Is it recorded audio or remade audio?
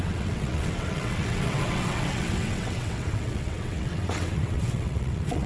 remade